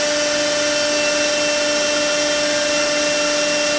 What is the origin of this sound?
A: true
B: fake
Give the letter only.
A